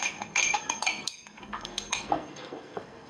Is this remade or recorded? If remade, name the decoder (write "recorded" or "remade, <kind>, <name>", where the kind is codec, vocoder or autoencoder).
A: remade, codec, SNAC